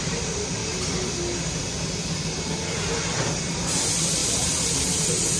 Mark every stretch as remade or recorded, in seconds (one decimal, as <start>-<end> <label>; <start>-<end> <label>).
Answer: 0.0-0.6 remade; 0.6-3.4 recorded; 3.4-4.2 remade; 4.2-5.4 recorded